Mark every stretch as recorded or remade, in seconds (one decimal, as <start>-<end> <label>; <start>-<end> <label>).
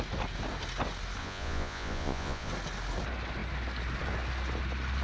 0.0-1.2 recorded; 1.2-2.5 remade; 2.5-5.0 recorded